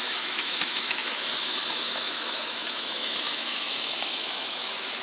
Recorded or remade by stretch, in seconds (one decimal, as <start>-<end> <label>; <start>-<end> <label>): 0.0-5.0 remade